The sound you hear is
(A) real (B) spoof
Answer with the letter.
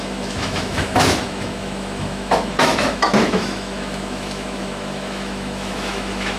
B